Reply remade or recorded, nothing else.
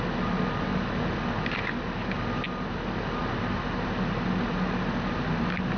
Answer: recorded